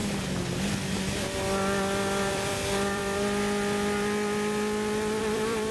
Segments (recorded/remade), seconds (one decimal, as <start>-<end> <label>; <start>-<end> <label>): 0.0-2.3 recorded; 2.3-5.7 remade